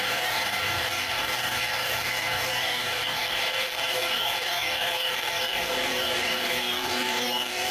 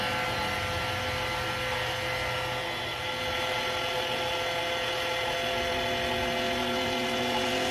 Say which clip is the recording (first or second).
second